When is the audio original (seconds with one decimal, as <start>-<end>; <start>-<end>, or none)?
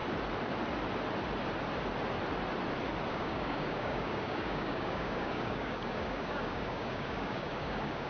0.0-3.1